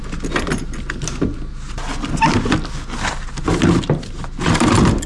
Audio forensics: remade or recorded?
recorded